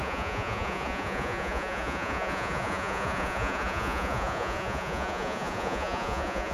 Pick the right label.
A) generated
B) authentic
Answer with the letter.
A